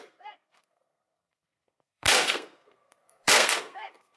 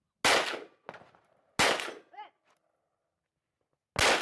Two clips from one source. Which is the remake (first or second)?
first